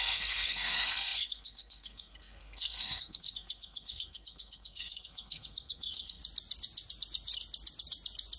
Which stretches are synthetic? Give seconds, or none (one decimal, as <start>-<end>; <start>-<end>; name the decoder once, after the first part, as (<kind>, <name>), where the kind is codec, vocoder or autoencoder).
0.0-6.2 (codec, SNAC)